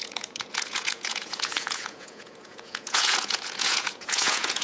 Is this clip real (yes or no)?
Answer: no